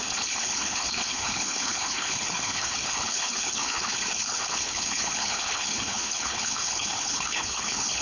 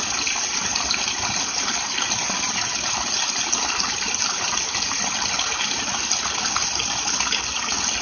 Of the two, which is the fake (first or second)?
first